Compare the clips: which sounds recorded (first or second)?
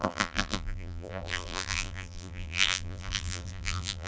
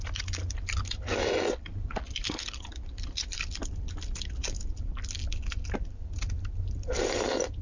second